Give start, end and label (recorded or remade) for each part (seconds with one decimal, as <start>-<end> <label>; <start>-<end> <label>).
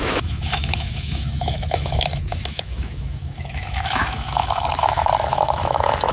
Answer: 0.0-6.1 remade